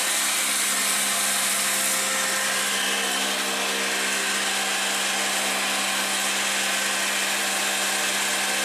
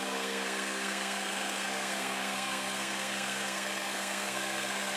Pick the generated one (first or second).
second